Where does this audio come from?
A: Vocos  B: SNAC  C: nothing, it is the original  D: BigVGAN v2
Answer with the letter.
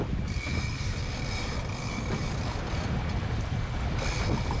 D